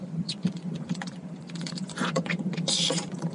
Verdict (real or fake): fake